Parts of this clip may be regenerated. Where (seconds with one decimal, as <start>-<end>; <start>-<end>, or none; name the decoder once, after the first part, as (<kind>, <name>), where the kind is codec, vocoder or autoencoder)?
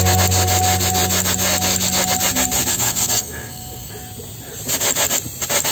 2.7-3.9 (codec, SNAC)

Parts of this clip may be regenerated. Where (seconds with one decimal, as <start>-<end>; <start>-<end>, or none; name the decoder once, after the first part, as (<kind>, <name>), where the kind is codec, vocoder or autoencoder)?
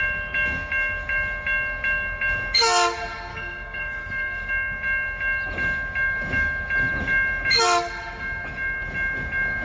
3.3-4.5 (codec, DAC)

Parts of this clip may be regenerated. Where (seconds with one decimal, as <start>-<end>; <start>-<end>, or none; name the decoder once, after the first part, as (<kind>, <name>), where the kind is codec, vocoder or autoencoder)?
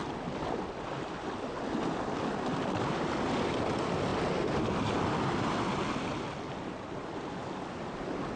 none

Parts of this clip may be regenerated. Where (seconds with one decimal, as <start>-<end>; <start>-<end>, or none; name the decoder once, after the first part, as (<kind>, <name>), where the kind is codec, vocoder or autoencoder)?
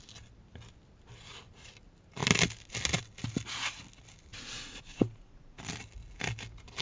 4.3-5.6 (vocoder, Vocos)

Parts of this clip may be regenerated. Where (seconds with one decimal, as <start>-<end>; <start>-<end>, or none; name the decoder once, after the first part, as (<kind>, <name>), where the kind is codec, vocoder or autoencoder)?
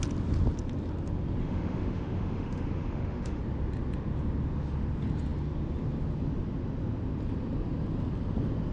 1.4-3.4 (autoencoder, DAC-VAE)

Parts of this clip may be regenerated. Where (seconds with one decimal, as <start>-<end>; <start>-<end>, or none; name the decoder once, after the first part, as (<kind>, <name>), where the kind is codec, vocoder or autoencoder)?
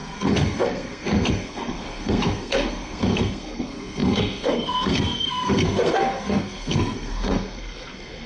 0.0-8.3 (codec, SNAC)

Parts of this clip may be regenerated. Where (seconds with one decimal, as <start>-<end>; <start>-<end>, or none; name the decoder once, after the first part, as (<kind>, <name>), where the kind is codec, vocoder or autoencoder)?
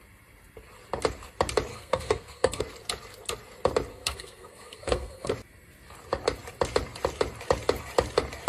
1.7-2.6 (codec, SNAC); 3.9-5.3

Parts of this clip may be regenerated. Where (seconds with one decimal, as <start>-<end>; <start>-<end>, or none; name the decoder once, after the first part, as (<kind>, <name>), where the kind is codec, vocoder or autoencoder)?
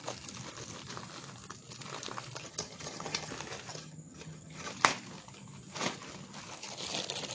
2.4-3.3 (vocoder, HiFi-GAN); 3.7-4.7